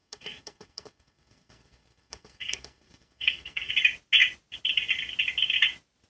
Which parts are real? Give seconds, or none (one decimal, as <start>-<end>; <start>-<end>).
3.7-6.1